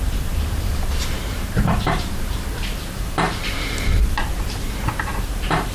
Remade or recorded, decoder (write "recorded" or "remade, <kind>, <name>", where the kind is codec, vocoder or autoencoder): remade, vocoder, BigVGAN v2